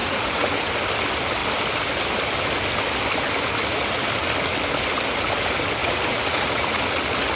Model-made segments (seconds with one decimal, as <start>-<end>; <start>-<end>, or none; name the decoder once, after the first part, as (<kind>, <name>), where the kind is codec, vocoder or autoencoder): 0.0-0.7 (vocoder, Vocos); 5.8-6.8